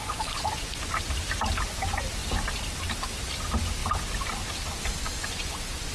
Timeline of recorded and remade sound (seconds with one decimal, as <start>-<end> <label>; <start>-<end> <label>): 0.0-0.9 remade; 0.9-5.0 recorded; 5.0-5.9 remade